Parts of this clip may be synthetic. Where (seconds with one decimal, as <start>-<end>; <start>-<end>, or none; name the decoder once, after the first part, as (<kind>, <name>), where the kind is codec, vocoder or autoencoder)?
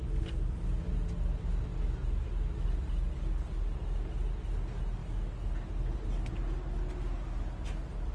none